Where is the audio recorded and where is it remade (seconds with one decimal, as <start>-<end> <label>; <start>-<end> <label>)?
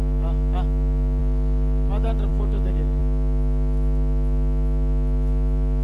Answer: 0.0-1.2 recorded; 1.2-1.9 remade; 1.9-2.3 recorded; 2.3-3.0 remade; 3.0-5.8 recorded